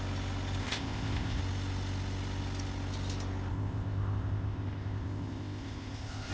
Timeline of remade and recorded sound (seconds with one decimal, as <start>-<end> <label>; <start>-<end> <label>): 0.0-0.6 recorded; 0.6-1.4 remade; 1.4-3.5 recorded; 3.5-6.3 remade